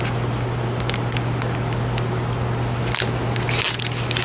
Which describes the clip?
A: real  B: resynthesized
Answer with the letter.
A